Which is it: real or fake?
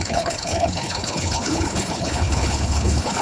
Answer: fake